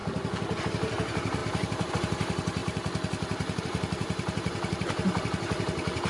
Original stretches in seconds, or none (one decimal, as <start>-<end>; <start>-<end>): 0.0-0.6; 2.6-3.6